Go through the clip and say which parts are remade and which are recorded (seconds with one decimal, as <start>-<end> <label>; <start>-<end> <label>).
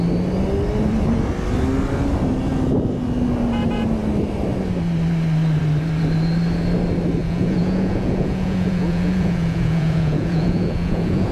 0.0-7.2 recorded; 7.2-11.3 remade